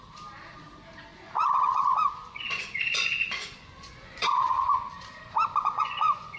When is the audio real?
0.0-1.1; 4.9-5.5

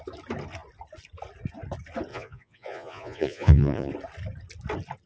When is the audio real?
0.0-2.1; 3.9-5.1

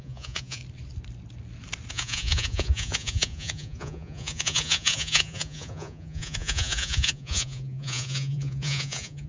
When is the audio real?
0.6-1.9

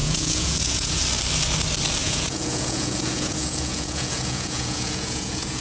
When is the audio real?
1.0-2.0